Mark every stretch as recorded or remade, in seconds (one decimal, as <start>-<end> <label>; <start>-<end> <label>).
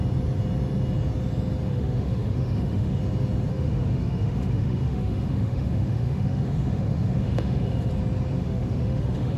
0.0-1.7 recorded; 1.7-3.0 remade; 3.0-3.5 recorded; 3.5-7.9 remade; 7.9-8.4 recorded; 8.4-9.4 remade